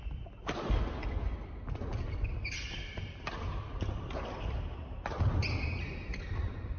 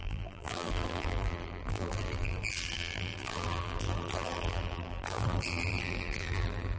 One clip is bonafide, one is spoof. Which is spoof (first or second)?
second